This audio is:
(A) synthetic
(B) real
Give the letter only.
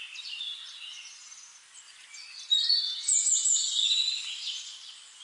B